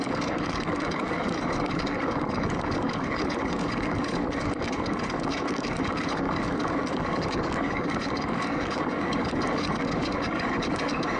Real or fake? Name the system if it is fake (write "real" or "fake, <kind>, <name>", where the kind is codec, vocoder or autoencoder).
fake, codec, DAC